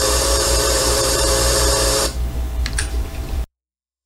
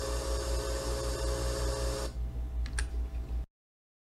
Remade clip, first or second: first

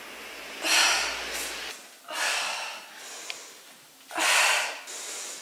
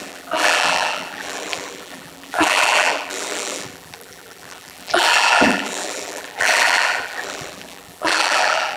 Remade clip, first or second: second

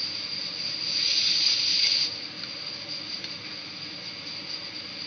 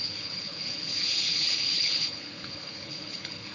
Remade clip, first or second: second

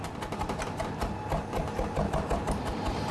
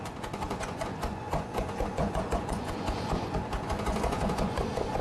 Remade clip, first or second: second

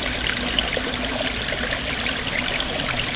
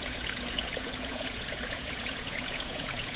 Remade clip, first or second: second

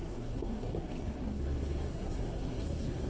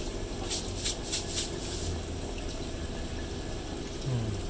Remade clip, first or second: first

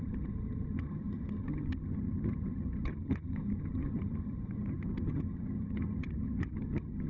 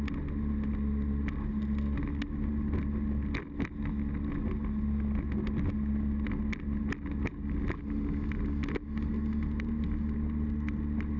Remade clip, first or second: first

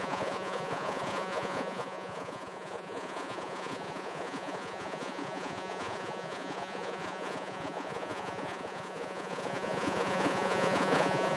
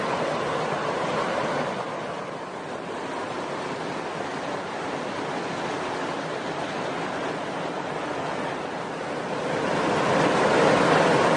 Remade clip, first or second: first